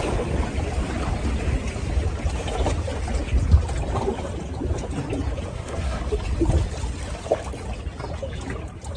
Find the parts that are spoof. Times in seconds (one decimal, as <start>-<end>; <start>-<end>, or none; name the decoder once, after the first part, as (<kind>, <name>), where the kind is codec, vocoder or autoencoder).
5.5-6.0 (codec, SNAC)